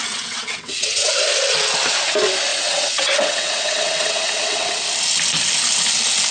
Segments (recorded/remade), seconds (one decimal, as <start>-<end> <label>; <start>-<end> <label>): 0.0-1.1 remade; 1.1-2.5 recorded; 2.5-4.8 remade; 4.8-6.3 recorded